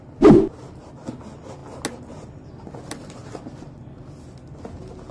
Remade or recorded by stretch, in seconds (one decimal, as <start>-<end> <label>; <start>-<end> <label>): 0.0-5.1 recorded